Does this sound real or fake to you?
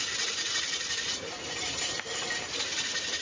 real